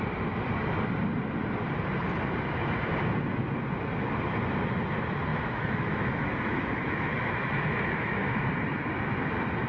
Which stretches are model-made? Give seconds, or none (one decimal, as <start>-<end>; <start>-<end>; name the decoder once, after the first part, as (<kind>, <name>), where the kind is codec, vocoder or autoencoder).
5.3-8.5 (autoencoder, DAC-VAE)